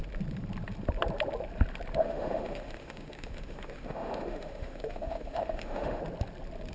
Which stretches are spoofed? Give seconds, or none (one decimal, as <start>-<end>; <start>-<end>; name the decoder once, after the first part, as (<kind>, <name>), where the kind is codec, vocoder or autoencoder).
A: 2.0-6.0 (autoencoder, DAC-VAE)